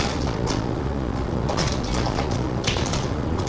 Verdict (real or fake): fake